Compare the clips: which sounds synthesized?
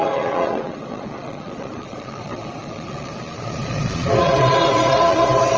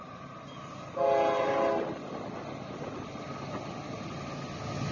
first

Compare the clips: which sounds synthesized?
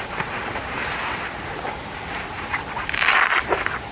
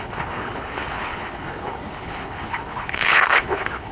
second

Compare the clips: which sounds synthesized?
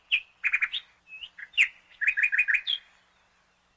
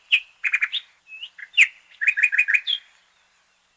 second